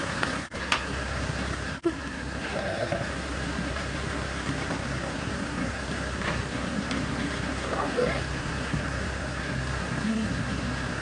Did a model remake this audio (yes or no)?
yes